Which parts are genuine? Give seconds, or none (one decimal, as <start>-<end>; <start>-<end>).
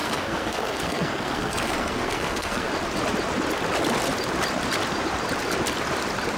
2.7-6.4